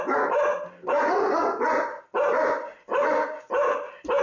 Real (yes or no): yes